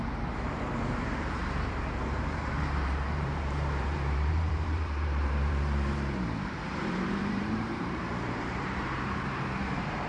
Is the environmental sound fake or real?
fake